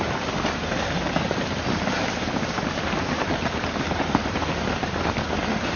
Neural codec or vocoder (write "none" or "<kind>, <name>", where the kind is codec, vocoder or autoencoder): none